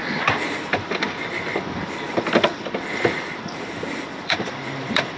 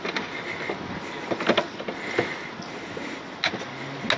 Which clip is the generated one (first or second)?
first